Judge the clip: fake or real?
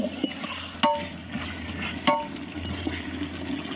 real